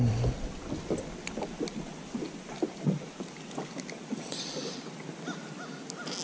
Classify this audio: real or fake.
real